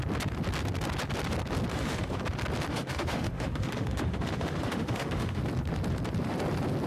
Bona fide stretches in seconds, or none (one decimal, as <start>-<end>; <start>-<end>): 0.0-1.7; 2.2-2.7; 5.4-6.9

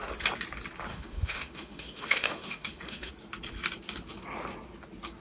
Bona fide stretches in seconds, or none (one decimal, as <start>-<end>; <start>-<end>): 0.0-0.9; 3.1-5.2

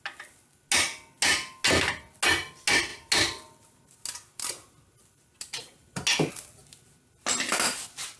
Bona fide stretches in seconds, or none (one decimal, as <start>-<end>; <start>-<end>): 0.0-8.2

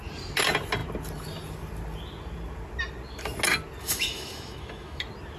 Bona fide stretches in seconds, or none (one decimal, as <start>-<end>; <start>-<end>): 0.0-3.8; 5.0-5.4

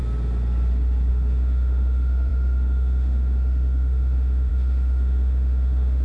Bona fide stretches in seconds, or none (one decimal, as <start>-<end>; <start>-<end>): 0.0-1.1

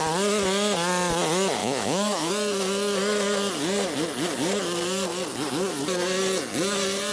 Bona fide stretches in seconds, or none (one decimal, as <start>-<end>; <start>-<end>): 0.0-1.6; 2.3-7.1